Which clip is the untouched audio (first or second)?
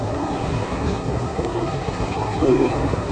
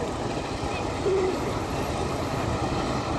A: second